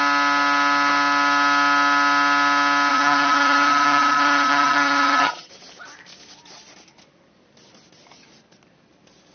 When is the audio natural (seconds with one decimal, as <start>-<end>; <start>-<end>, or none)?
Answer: 0.0-2.9; 5.5-9.3